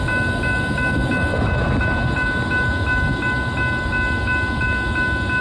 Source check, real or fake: real